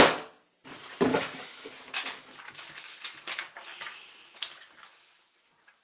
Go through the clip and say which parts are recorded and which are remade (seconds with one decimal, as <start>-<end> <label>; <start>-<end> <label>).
0.0-1.1 recorded; 1.1-1.7 remade; 1.7-5.8 recorded